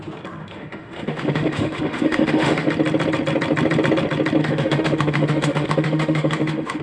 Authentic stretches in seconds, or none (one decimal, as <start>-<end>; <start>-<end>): 0.0-0.4; 2.7-4.4